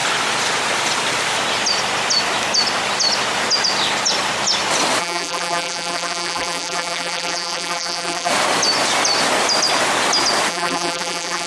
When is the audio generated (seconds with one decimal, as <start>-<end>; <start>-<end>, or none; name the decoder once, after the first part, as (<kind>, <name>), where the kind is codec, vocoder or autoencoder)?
5.0-8.3 (vocoder, BigVGAN v2); 10.5-11.5